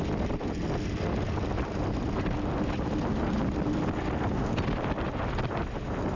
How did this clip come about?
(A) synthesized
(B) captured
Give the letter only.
B